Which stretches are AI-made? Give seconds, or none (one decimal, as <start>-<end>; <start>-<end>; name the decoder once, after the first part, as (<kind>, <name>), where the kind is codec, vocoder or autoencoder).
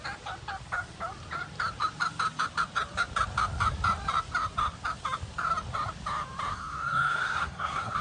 6.5-8.0 (codec, SNAC)